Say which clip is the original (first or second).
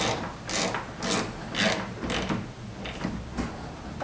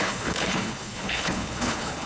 first